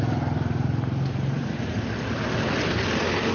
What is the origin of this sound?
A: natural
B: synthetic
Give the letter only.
A